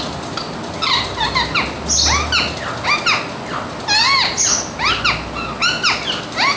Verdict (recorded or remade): recorded